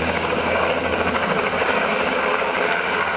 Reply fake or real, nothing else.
fake